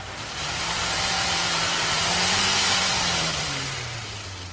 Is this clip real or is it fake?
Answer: fake